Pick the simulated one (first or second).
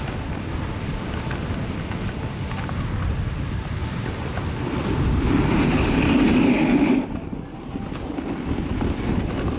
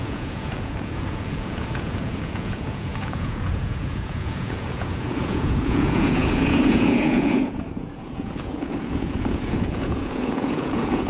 second